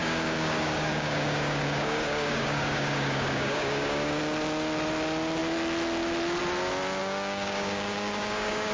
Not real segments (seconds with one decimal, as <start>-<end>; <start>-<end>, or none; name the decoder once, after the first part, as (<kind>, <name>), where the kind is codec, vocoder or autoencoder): 0.0-4.2 (codec, DAC); 7.0-8.7